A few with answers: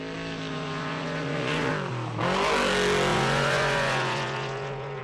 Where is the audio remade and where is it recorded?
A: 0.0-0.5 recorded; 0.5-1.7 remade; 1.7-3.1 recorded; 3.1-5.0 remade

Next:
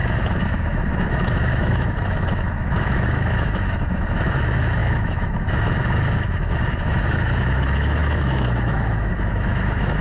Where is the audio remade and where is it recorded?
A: 0.0-10.0 remade